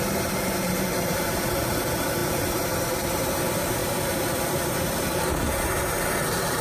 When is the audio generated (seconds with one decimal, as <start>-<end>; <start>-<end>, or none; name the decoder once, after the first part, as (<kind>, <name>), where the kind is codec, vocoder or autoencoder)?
0.0-6.6 (vocoder, BigVGAN v2)